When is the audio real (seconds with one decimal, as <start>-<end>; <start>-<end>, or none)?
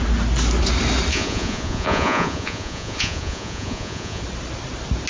0.0-1.1; 4.2-5.1